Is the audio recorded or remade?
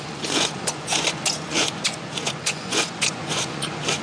remade